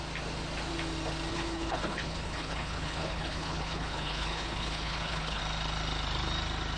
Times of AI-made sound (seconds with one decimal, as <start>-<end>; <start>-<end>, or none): 1.3-5.4